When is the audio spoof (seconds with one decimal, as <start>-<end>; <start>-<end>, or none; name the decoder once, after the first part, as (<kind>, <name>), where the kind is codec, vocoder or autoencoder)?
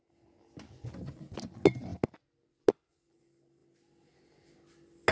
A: none